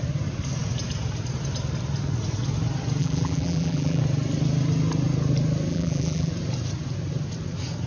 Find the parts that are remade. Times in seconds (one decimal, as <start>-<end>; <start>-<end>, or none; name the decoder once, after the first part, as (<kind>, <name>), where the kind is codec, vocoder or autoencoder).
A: 3.0-4.0 (vocoder, BigVGAN v2); 5.7-6.3